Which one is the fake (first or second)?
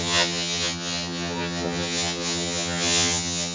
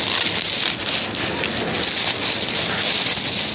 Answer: first